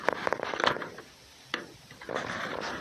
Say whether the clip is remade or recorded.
recorded